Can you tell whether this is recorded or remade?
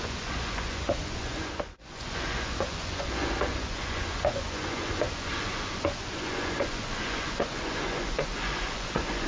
remade